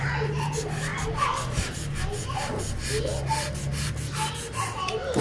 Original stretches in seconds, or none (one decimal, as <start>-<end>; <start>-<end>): 0.0-5.2